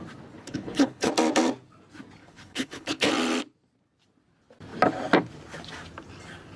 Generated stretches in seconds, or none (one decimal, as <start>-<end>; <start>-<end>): 0.4-1.1; 2.2-3.1